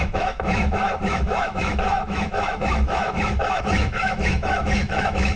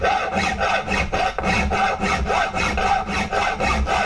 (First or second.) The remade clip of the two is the first